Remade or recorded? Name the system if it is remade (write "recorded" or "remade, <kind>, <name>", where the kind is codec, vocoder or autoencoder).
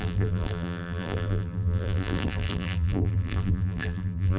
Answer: remade, vocoder, BigVGAN v2